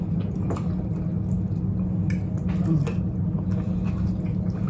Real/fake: real